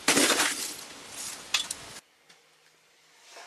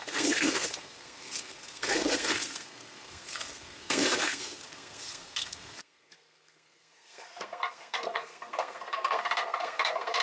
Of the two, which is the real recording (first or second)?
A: first